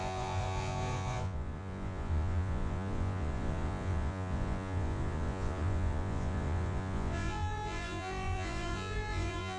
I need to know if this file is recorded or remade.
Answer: remade